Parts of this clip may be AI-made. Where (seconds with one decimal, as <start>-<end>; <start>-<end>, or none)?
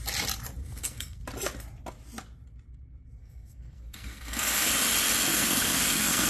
0.6-1.2; 3.2-4.7; 5.3-6.3